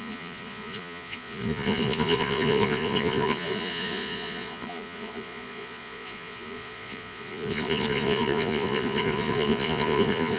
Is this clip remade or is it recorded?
remade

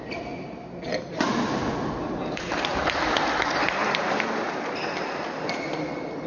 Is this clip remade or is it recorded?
recorded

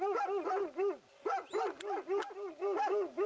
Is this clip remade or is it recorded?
recorded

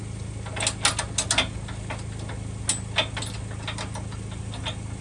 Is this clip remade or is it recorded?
recorded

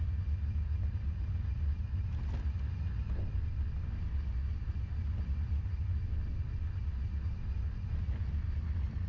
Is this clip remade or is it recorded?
recorded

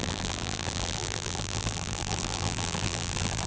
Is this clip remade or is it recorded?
remade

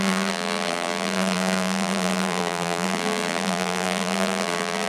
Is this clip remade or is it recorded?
remade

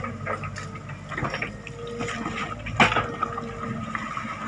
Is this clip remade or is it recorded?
recorded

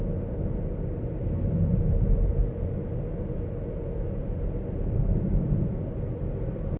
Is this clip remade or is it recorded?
recorded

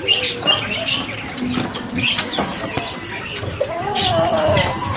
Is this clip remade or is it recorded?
recorded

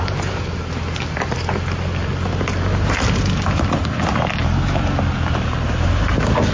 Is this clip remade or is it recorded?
recorded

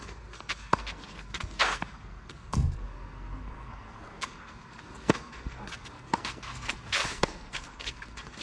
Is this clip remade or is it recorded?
remade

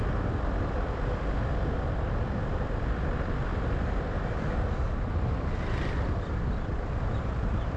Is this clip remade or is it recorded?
remade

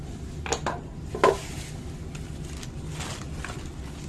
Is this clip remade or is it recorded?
recorded